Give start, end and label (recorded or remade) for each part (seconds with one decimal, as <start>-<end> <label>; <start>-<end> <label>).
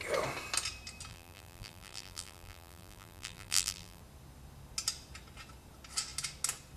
0.0-1.1 recorded; 1.1-4.0 remade; 4.0-6.8 recorded